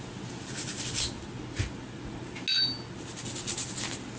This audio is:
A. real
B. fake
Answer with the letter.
A